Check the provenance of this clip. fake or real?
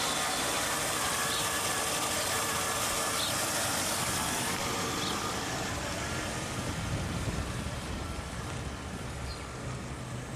real